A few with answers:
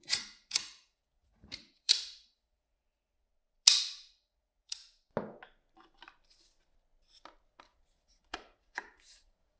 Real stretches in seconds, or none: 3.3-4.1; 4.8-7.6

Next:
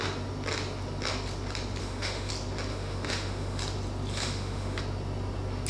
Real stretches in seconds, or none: 0.0-1.8; 2.3-2.7; 3.6-4.1; 4.8-5.7